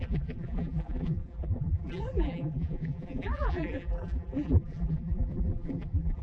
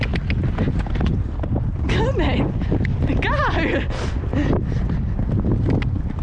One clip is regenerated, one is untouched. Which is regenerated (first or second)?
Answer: first